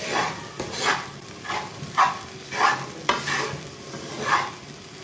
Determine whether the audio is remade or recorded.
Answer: remade